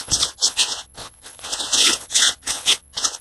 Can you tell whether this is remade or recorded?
remade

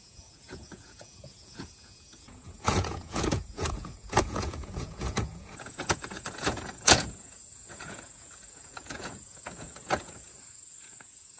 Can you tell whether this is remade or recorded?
remade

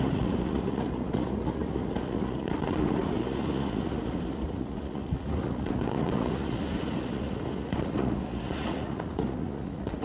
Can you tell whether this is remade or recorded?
remade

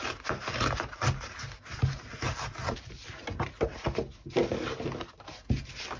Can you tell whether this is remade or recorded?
recorded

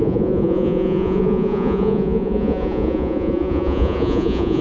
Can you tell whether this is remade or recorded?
remade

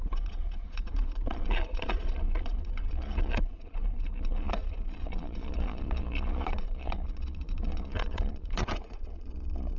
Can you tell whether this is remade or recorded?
remade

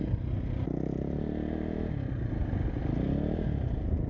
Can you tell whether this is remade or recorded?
recorded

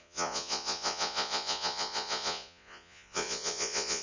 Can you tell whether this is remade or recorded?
remade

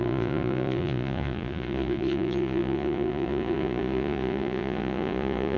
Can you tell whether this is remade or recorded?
remade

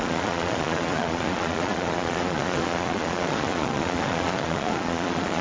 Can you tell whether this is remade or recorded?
remade